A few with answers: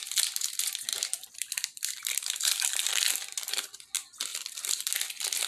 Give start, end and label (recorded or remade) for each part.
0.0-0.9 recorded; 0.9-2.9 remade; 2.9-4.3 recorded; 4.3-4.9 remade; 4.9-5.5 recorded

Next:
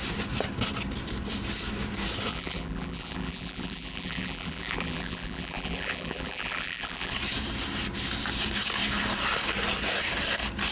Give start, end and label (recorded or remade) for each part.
0.0-2.3 recorded; 2.3-7.1 remade; 7.1-10.7 recorded

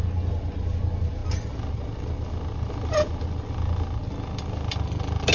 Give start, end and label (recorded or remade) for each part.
0.0-5.3 recorded

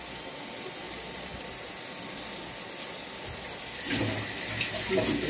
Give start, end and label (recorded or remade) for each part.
0.0-5.3 recorded